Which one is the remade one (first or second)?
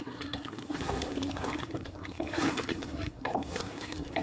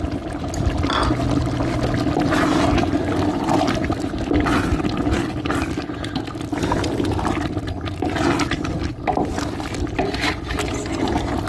first